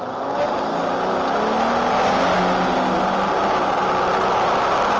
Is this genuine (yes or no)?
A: yes